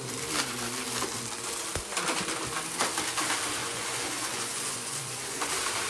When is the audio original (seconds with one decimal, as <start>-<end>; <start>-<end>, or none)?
0.0-3.6; 5.5-5.9